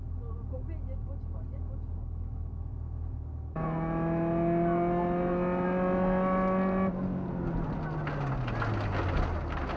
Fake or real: real